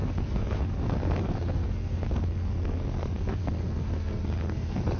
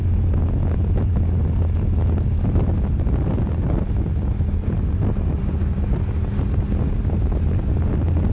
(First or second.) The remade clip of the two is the first